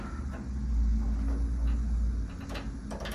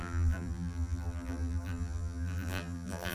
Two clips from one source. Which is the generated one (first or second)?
second